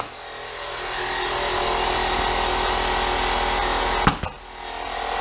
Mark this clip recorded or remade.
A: recorded